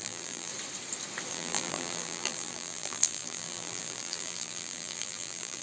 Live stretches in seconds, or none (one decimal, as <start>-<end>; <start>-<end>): 0.5-1.3